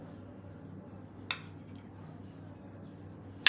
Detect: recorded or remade recorded